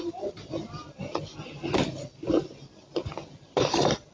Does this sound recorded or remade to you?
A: recorded